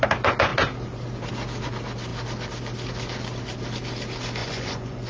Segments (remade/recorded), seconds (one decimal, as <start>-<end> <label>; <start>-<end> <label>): 0.0-4.4 recorded; 4.4-5.1 remade